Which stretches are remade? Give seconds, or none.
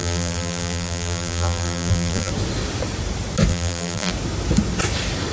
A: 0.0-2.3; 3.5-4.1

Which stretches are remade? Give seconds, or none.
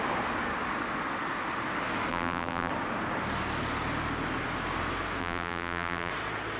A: 2.1-2.7; 5.2-6.1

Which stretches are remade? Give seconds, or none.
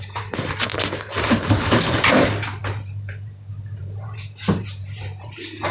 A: 0.0-5.7